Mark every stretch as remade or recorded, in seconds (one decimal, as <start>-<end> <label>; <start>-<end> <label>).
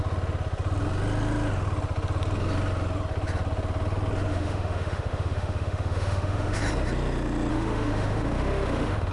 0.0-4.3 recorded; 4.3-6.6 remade; 6.6-7.5 recorded; 7.5-9.1 remade